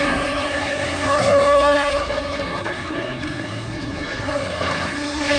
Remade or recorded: remade